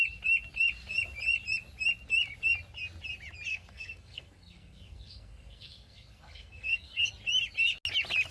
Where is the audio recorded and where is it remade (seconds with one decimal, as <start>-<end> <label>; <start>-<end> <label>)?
0.0-3.5 recorded; 3.5-7.1 remade; 7.1-8.3 recorded